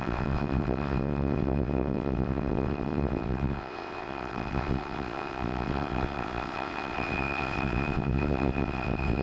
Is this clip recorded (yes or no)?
no